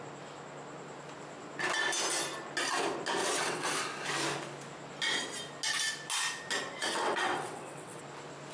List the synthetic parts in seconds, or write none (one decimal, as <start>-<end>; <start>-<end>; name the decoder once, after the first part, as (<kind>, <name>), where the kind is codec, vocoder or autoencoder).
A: 3.2-3.8 (vocoder, WaveNeXt); 6.8-8.0